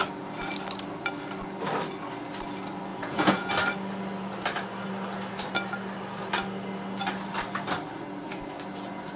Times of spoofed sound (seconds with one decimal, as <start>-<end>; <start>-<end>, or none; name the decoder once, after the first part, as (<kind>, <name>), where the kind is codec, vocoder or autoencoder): 2.9-3.5 (vocoder, Vocos)